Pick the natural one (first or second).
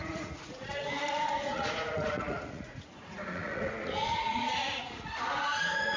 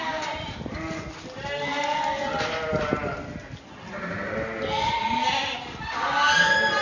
second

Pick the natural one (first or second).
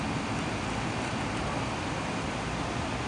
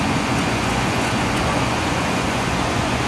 first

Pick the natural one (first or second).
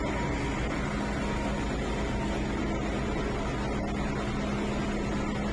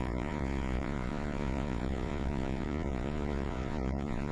first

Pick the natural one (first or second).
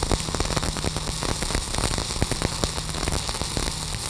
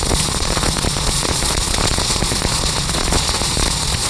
first